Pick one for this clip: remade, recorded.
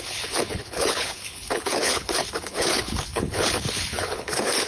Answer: remade